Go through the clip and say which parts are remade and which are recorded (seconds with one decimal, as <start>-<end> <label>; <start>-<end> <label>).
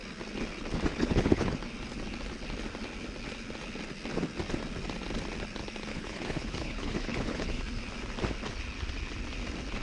0.0-1.0 recorded; 1.0-1.6 remade; 1.6-5.9 recorded; 5.9-7.6 remade; 7.6-9.8 recorded